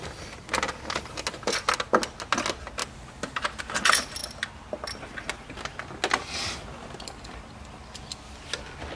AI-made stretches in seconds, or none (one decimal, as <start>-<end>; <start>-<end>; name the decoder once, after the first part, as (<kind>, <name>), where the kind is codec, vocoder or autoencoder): none